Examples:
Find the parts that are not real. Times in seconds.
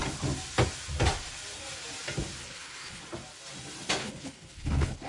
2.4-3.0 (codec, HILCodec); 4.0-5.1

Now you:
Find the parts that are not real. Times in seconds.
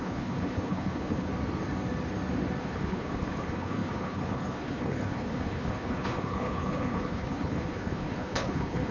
0.0-1.3 (codec, HILCodec); 2.6-8.9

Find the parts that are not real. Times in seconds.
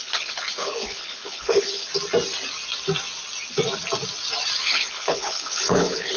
0.0-1.9 (codec, HILCodec); 4.6-6.2